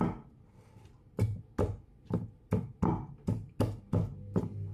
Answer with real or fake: real